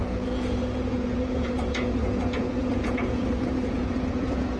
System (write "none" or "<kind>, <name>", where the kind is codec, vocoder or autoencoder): vocoder, Vocos